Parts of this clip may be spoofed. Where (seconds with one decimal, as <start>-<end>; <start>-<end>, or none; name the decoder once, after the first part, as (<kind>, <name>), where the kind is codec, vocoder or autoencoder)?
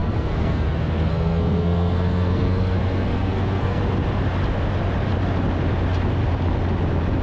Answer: 0.0-3.8 (codec, SNAC)